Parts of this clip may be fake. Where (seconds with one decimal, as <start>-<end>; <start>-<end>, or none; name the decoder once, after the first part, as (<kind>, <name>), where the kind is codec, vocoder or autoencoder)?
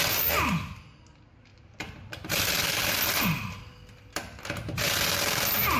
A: 1.5-3.6 (vocoder, BigVGAN v2)